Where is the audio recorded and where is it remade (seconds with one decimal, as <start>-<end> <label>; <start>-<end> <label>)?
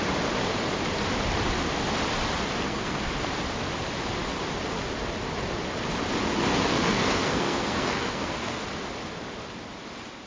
0.0-2.6 recorded; 2.6-3.1 remade; 3.1-6.5 recorded; 6.5-8.6 remade; 8.6-10.3 recorded